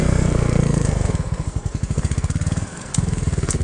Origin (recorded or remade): remade